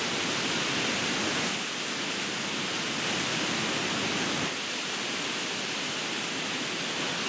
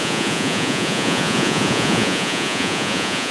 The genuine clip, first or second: first